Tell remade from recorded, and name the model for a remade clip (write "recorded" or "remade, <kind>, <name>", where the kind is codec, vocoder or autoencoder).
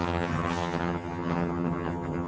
remade, vocoder, HiFi-GAN